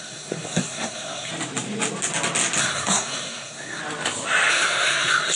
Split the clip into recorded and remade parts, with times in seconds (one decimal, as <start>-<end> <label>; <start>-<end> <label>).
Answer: 0.0-1.3 remade; 1.3-2.6 recorded; 2.6-3.8 remade; 3.8-4.5 recorded; 4.5-5.4 remade